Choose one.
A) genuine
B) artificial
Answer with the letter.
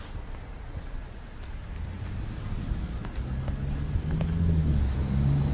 A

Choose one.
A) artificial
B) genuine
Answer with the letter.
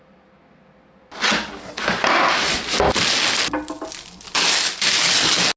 B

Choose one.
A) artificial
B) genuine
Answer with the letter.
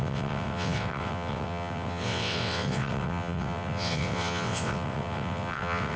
A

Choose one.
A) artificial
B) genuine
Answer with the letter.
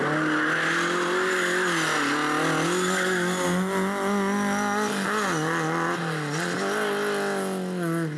B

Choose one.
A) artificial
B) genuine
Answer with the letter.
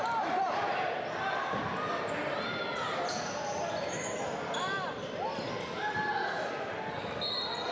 B